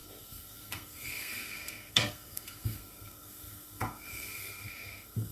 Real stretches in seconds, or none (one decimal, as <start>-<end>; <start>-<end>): none